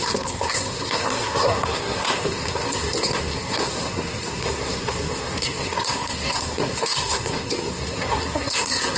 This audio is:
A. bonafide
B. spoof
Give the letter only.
B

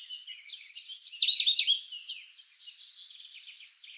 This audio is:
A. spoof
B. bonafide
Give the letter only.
B